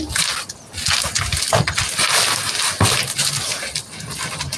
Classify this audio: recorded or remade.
recorded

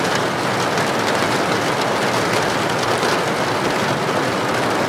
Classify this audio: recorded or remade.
recorded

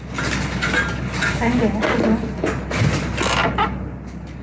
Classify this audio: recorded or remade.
recorded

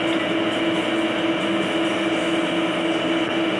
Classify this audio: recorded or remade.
recorded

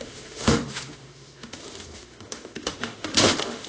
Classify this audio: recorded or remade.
remade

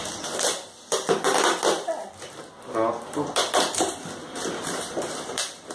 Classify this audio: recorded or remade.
recorded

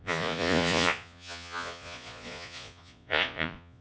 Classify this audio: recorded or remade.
remade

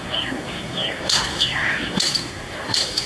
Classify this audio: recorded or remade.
remade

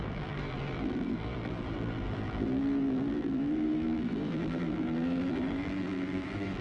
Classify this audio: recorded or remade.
remade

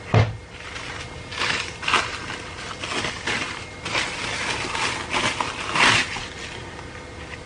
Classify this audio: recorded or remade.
recorded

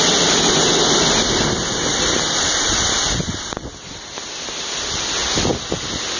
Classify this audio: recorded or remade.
recorded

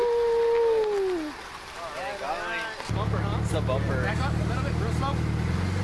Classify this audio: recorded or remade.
recorded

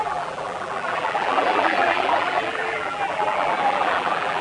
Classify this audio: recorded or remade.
remade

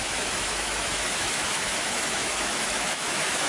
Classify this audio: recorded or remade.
remade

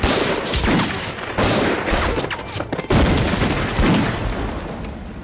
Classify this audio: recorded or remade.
remade